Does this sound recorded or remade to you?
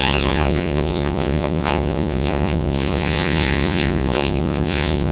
remade